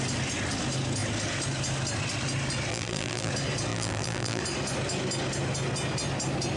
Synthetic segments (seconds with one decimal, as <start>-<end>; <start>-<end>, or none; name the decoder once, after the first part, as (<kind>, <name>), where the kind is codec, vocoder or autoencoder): 2.7-3.3 (vocoder, BigVGAN v2); 3.7-4.4